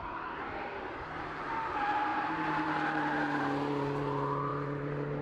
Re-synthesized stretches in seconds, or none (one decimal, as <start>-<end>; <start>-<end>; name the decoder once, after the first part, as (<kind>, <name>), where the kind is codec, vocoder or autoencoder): 2.1-3.4 (vocoder, BigVGAN v2); 4.5-5.2